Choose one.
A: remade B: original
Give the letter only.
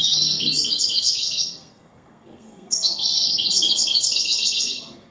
A